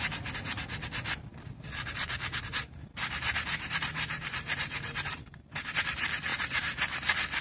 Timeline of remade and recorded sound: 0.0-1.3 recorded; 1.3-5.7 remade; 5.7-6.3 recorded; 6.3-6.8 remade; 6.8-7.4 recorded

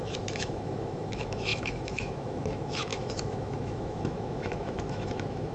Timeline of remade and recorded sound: 0.0-5.5 remade

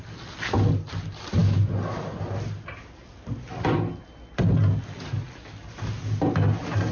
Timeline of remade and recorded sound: 0.0-6.9 recorded

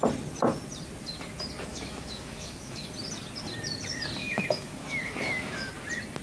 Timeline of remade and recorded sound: 0.0-1.7 recorded; 1.7-2.9 remade; 2.9-4.2 recorded; 4.2-5.7 remade; 5.7-6.2 recorded

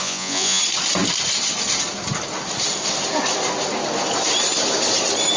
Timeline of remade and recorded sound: 0.0-0.6 remade; 0.6-5.4 recorded

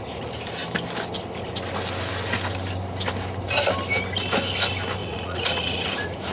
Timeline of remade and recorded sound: 0.0-5.0 recorded; 5.0-6.3 remade

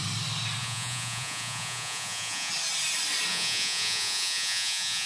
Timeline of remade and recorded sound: 0.0-0.6 recorded; 0.6-2.5 remade; 2.5-3.3 recorded; 3.3-5.1 remade